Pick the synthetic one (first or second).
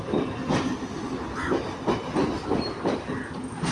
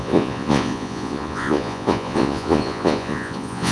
second